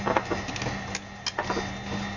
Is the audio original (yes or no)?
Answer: yes